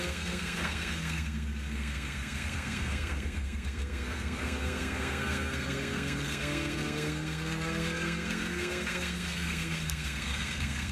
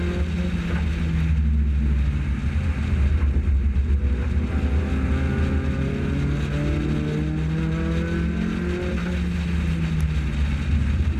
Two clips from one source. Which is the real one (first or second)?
second